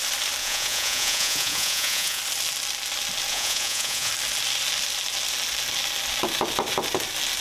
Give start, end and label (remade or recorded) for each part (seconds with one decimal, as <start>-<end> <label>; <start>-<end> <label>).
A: 0.0-0.4 recorded; 0.4-2.2 remade; 2.2-3.3 recorded; 3.3-4.1 remade; 4.1-7.4 recorded

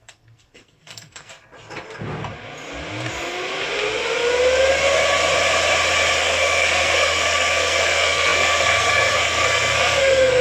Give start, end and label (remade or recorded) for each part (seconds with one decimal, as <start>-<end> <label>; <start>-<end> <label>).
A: 0.0-1.3 remade; 1.3-6.2 recorded; 6.2-10.4 remade

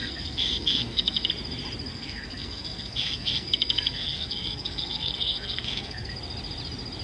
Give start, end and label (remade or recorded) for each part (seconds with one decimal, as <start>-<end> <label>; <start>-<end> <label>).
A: 0.0-1.3 remade; 1.3-1.9 recorded; 1.9-6.1 remade; 6.1-7.0 recorded

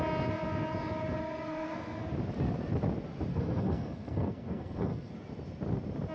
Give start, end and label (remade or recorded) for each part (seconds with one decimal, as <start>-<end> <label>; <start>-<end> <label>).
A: 0.0-1.2 recorded; 1.2-2.1 remade; 2.1-3.3 recorded; 3.3-5.1 remade; 5.1-6.1 recorded

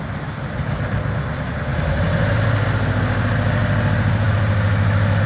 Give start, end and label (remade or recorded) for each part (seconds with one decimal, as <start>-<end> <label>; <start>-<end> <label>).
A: 0.0-5.3 recorded